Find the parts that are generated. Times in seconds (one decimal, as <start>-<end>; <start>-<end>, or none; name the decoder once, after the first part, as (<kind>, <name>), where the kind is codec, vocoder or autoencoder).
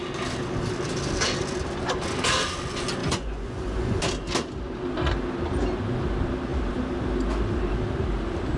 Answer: 3.0-4.0 (vocoder, Vocos)